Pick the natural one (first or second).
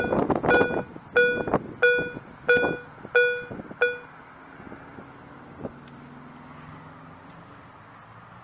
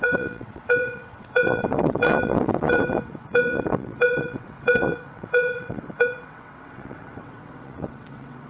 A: first